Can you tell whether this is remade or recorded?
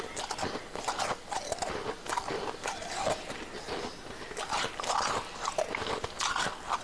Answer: recorded